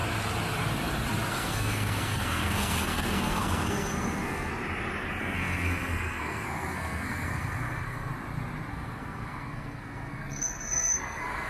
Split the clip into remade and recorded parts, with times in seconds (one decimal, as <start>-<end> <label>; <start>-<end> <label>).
0.0-1.3 recorded; 1.3-4.5 remade; 4.5-5.2 recorded; 5.2-8.1 remade; 8.1-8.7 recorded; 8.7-11.5 remade